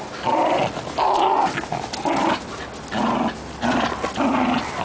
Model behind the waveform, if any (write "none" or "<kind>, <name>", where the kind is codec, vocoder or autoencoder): none